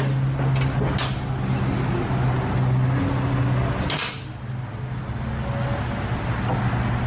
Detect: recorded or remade recorded